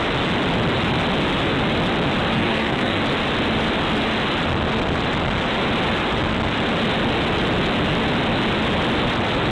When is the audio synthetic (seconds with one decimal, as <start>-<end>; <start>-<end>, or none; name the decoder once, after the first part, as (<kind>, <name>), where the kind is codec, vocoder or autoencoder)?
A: 2.3-3.0 (codec, SNAC)